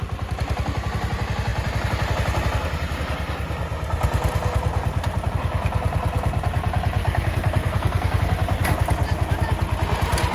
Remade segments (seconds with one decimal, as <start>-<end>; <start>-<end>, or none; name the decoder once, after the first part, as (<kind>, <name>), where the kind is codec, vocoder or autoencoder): 7.0-8.2 (codec, SNAC)